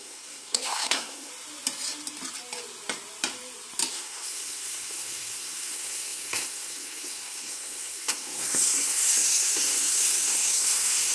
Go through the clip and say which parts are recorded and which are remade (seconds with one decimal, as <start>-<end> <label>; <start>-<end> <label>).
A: 0.0-1.3 remade; 1.3-3.9 recorded; 3.9-11.1 remade